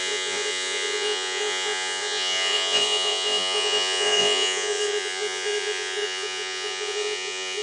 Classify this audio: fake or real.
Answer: fake